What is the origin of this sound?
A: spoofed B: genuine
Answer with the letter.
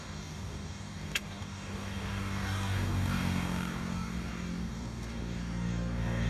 A